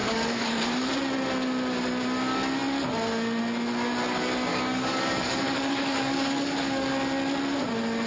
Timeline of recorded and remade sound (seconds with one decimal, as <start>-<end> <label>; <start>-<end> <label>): 0.0-0.6 remade; 0.6-4.5 recorded; 4.5-6.9 remade; 6.9-8.1 recorded